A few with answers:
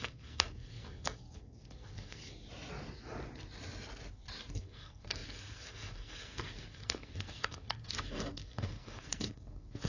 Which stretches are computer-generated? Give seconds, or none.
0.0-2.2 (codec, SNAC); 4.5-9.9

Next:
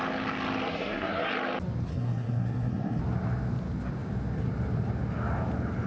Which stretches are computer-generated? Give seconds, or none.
0.7-1.3 (codec, SNAC); 1.9-3.0

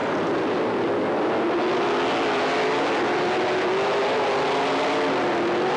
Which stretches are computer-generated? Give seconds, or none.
none

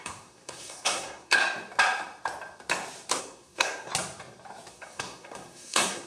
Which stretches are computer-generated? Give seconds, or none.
0.0-1.4 (codec, SNAC); 3.2-3.9; 4.7-6.1

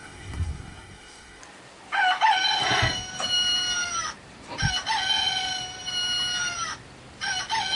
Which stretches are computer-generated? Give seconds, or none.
0.0-1.4 (codec, SNAC)

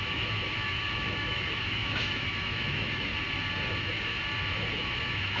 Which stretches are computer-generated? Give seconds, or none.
0.0-3.1 (autoencoder, DAC-VAE); 3.7-4.2; 4.7-5.4